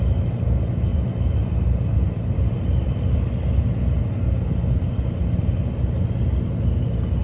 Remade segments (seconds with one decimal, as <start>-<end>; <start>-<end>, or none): 0.9-3.6